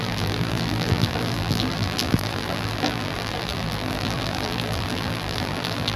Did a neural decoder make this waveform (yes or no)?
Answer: yes